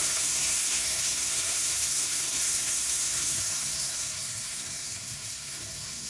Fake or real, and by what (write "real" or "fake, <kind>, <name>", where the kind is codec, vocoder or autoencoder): fake, codec, SNAC